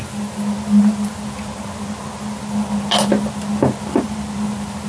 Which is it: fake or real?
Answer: real